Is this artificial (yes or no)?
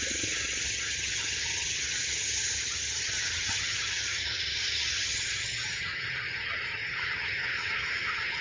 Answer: yes